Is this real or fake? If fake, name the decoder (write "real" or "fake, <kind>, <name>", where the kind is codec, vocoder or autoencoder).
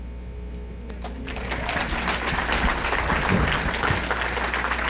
real